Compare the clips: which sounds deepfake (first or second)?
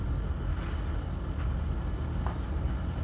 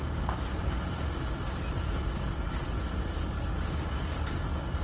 second